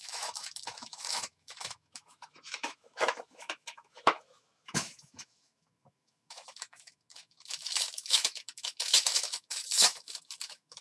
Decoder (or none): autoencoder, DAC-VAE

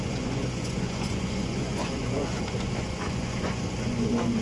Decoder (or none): vocoder, Vocos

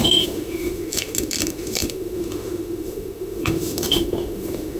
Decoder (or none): autoencoder, DAC-VAE